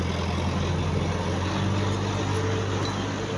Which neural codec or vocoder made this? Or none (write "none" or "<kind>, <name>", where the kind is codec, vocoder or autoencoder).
none